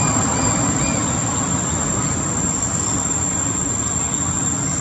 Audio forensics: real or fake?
real